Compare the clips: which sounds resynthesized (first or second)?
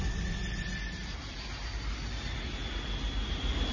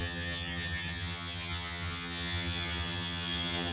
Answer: second